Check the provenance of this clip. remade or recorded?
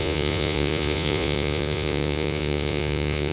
remade